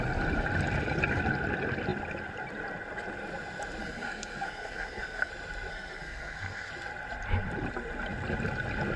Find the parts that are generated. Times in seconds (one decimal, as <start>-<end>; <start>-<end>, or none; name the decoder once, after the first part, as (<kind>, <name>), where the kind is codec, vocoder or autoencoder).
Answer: 3.8-5.3 (codec, SNAC); 5.7-6.7